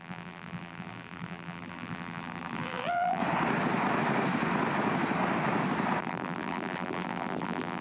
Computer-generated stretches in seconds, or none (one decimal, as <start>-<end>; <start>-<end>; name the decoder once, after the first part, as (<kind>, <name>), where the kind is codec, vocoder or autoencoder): 0.0-3.2 (vocoder, BigVGAN v2); 6.0-7.8